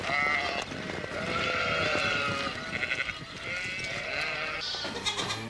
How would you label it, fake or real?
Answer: real